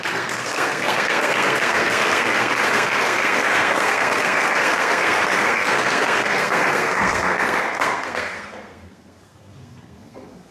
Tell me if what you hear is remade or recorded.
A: remade